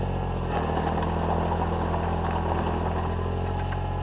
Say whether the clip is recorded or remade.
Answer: recorded